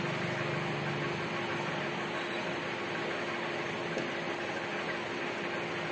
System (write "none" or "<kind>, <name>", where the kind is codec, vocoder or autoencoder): none